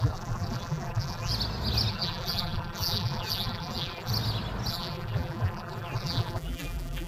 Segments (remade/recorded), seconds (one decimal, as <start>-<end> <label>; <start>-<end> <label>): 0.0-1.3 remade; 1.3-1.9 recorded; 1.9-4.1 remade; 4.1-4.7 recorded; 4.7-7.1 remade